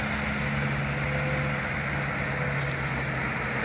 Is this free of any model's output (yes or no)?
yes